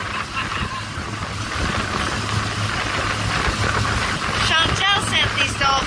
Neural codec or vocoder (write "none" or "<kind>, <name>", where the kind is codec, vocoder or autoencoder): none